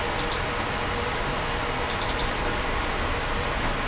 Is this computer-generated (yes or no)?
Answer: no